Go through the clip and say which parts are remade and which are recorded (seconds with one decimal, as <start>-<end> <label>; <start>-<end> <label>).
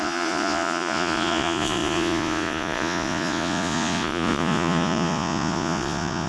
0.0-6.3 remade